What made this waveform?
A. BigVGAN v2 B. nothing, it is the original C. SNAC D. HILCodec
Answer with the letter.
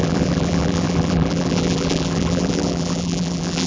A